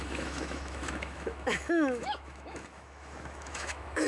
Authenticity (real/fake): fake